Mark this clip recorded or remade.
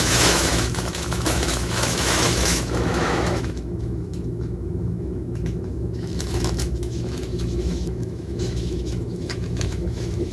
remade